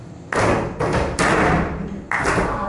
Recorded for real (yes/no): yes